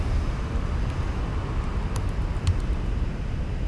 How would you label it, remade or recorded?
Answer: recorded